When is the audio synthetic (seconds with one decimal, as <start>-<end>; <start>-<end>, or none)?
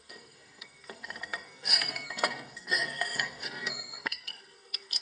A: 0.0-5.0